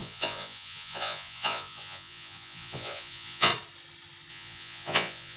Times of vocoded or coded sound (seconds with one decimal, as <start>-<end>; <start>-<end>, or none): 0.0-3.5; 4.3-5.4